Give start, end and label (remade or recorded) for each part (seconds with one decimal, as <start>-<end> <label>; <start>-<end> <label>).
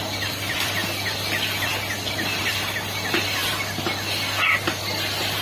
0.0-0.8 remade; 0.8-2.4 recorded; 2.4-3.4 remade; 3.4-5.4 recorded